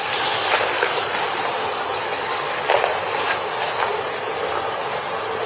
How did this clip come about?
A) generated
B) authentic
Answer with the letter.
B